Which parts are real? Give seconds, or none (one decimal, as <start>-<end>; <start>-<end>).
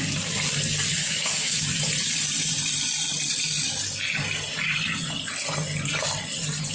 0.0-1.0; 1.6-6.7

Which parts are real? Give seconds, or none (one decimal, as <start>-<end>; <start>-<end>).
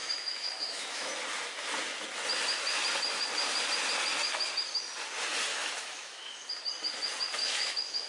1.1-5.5; 6.5-7.4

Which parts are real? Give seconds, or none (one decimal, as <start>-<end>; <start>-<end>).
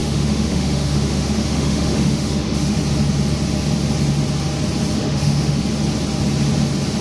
2.8-5.0; 5.6-7.0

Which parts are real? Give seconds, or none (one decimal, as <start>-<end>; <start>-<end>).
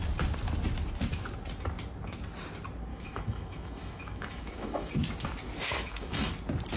0.0-2.9; 4.9-5.7; 6.3-6.8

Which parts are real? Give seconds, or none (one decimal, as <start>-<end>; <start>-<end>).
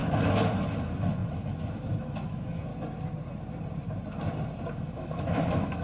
0.0-0.6; 2.7-4.7